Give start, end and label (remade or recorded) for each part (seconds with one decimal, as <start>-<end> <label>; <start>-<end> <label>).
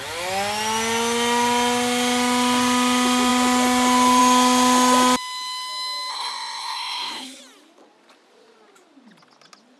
0.0-6.1 recorded; 6.1-7.4 remade; 7.4-9.8 recorded